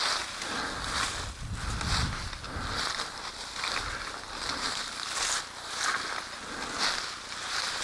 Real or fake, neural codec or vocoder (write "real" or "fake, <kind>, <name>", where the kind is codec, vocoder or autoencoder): real